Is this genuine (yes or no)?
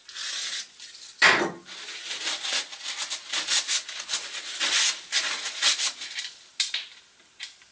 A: yes